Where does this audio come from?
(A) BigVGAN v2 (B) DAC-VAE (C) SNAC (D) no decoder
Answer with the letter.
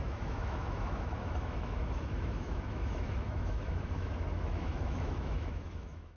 B